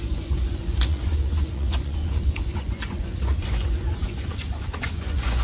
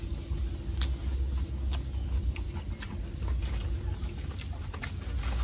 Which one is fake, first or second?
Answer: first